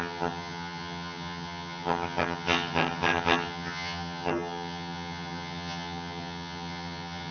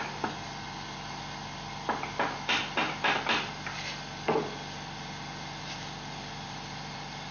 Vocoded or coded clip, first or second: first